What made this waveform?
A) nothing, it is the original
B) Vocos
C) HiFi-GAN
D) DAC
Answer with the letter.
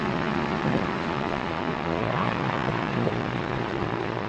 B